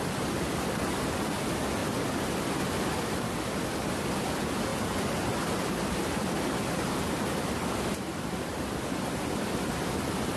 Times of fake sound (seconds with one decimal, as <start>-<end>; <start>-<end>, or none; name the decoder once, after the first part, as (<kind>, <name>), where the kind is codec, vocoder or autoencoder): none

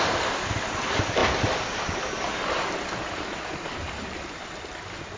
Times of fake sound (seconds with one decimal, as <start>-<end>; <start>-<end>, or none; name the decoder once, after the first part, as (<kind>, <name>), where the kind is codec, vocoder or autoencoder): none

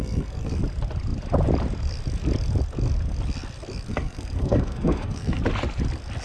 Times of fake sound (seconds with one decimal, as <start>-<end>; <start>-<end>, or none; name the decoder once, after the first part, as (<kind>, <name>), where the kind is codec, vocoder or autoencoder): 0.0-0.6 (codec, SNAC); 3.9-5.4

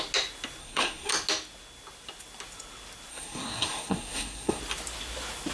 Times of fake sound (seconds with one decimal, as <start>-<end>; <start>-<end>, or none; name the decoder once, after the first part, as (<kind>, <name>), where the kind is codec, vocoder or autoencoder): 0.6-1.1 (codec, SNAC); 3.1-4.6

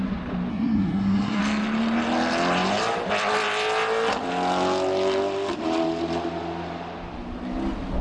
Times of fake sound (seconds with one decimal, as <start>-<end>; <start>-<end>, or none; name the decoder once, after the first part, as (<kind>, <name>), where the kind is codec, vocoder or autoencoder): 0.5-1.4 (codec, SNAC)

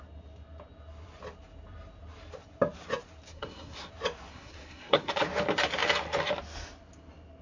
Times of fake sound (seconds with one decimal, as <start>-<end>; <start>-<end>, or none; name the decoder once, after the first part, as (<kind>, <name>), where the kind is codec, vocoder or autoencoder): 3.3-3.9 (codec, SNAC); 4.3-5.1

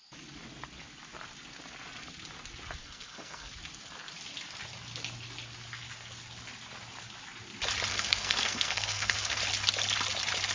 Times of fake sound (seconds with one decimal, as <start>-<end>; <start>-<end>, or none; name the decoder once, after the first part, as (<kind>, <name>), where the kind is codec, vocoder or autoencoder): 2.8-3.5 (codec, SNAC); 7.9-9.4